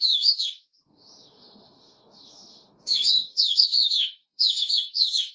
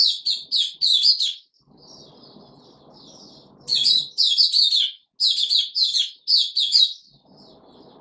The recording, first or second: second